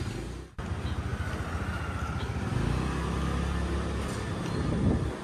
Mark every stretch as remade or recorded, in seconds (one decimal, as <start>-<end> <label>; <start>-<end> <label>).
0.0-5.2 recorded